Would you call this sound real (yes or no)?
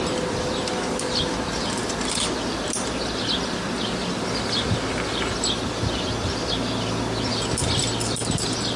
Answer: yes